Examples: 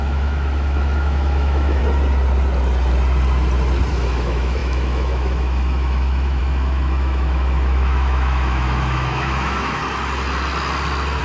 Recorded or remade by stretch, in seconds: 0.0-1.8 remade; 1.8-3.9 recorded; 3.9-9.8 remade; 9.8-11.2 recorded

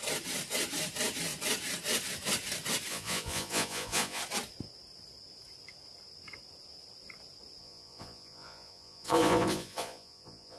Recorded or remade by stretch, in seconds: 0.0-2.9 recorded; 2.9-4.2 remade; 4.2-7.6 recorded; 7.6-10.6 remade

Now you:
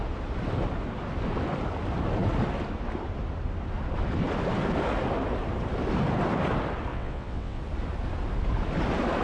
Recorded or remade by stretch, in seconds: 0.0-6.9 recorded; 6.9-7.6 remade; 7.6-9.2 recorded

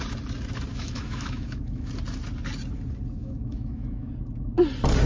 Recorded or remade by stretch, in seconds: 0.0-0.7 recorded; 0.7-1.9 remade; 1.9-3.2 recorded; 3.2-4.1 remade; 4.1-5.1 recorded